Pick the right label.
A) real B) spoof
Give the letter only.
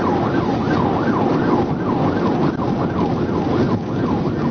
A